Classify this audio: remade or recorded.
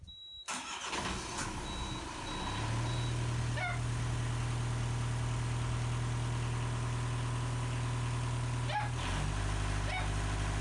recorded